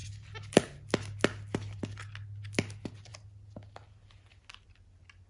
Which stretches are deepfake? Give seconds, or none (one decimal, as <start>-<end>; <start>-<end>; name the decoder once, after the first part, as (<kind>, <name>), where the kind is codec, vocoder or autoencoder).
none